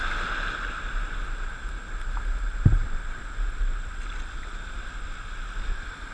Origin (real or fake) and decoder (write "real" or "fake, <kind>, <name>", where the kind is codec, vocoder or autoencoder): real